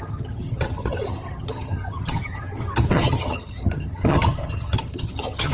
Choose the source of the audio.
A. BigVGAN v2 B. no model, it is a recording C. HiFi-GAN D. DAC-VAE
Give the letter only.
C